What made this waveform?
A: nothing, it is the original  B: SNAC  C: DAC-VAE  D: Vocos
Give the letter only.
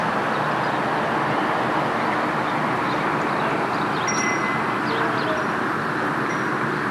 A